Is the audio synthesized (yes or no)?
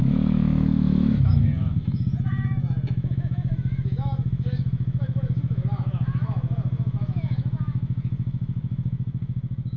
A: yes